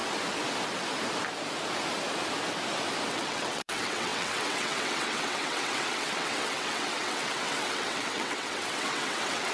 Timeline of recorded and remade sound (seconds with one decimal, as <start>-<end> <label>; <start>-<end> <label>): 0.0-3.1 recorded; 3.1-9.5 remade